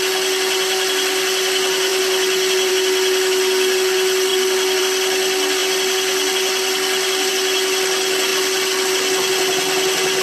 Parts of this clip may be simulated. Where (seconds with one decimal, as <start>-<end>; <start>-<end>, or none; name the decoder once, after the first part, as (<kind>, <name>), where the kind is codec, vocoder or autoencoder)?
none